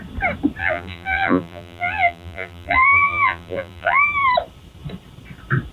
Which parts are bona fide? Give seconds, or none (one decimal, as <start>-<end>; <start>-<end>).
0.0-0.6; 4.0-5.7